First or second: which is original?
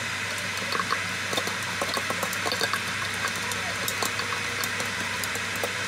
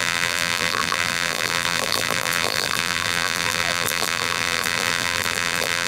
first